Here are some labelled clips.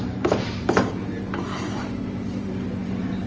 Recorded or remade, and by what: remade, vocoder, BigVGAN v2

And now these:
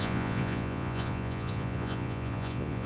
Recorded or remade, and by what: remade, vocoder, Vocos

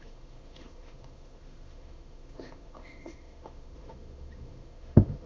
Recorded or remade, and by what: remade, autoencoder, DAC-VAE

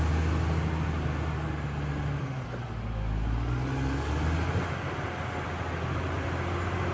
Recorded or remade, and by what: recorded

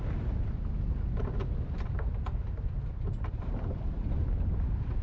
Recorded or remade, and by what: recorded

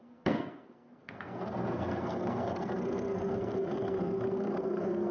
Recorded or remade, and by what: remade, codec, SNAC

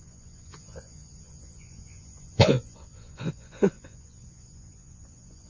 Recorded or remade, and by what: remade, vocoder, Vocos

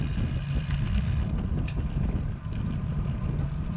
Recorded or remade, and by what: recorded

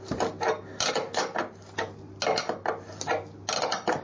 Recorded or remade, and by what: recorded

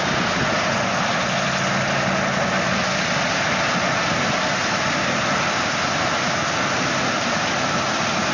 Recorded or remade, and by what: recorded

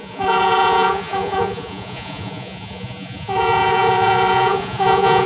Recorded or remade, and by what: remade, vocoder, Vocos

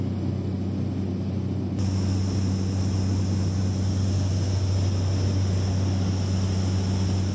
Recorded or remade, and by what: recorded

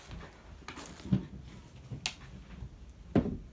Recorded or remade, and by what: recorded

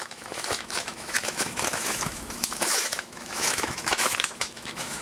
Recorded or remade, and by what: remade, autoencoder, DAC-VAE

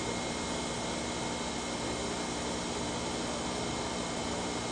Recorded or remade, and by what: recorded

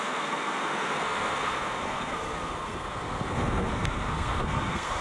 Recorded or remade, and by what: remade, codec, SNAC